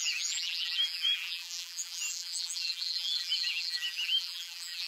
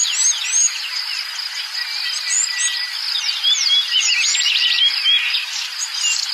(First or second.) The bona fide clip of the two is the second